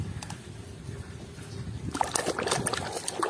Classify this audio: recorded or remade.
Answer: recorded